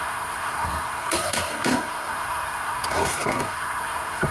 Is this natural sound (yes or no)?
no